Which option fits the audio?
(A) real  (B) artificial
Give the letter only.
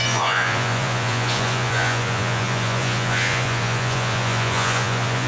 B